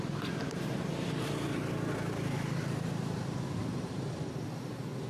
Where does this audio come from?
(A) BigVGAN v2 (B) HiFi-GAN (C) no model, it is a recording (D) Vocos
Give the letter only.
C